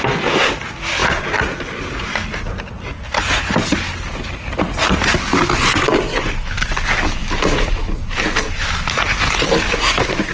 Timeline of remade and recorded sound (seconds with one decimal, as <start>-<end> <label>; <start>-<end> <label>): 0.0-10.3 recorded